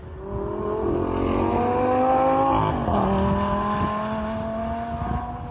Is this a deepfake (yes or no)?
no